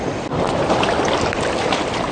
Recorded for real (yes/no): yes